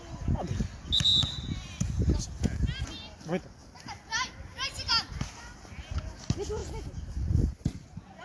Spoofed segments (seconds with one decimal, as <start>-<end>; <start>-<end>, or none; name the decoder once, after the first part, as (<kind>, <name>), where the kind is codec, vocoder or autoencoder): none